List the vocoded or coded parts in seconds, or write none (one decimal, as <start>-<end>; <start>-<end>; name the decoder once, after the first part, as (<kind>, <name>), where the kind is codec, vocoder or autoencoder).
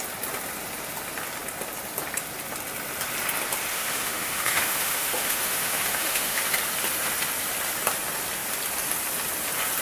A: 3.7-6.4 (autoencoder, DAC-VAE)